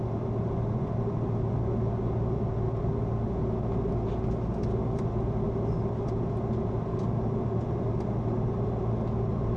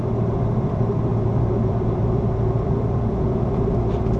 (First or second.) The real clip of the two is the first